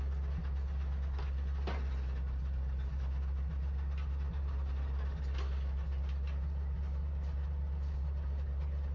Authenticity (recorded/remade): recorded